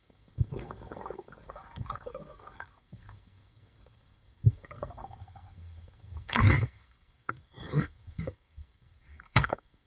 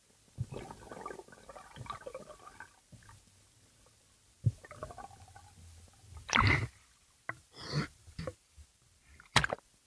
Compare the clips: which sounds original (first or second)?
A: second